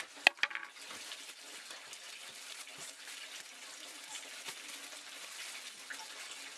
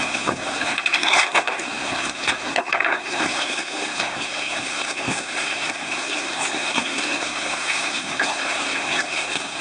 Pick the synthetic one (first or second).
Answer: second